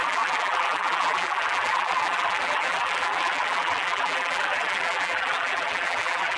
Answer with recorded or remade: remade